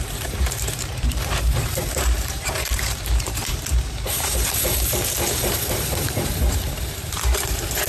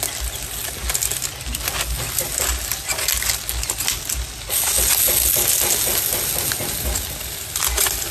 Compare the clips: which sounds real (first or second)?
second